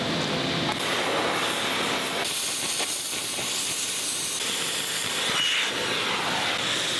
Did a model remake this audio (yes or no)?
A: no